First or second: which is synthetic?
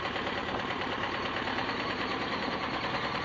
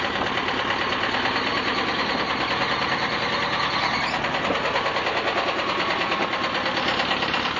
first